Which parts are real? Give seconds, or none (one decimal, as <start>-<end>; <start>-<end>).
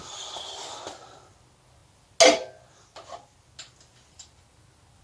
0.0-5.0